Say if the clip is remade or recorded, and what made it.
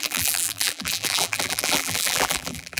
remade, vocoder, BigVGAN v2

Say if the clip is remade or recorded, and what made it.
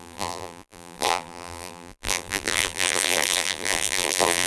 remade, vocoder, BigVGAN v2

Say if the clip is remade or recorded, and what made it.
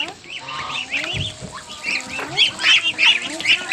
recorded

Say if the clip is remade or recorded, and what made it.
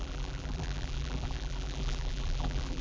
remade, vocoder, BigVGAN v2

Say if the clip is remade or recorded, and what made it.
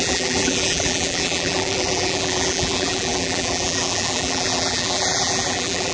remade, vocoder, BigVGAN v2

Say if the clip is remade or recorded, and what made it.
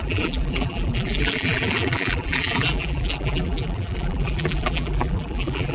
remade, vocoder, BigVGAN v2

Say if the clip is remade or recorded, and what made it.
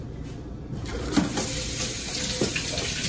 recorded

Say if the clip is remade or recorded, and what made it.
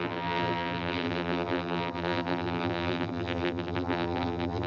remade, vocoder, BigVGAN v2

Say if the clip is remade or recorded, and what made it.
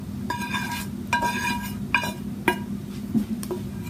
recorded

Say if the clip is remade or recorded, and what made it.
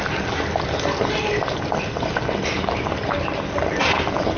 recorded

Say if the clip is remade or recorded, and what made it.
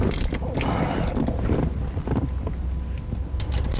recorded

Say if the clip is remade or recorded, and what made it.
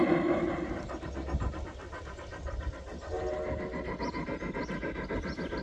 recorded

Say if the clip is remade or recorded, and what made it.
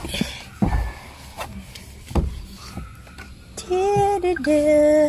recorded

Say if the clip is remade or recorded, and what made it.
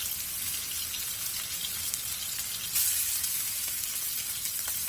recorded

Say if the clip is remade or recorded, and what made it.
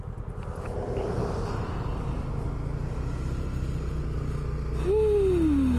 recorded